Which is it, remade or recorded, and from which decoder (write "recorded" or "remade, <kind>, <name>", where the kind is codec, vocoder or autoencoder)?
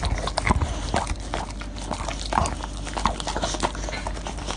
recorded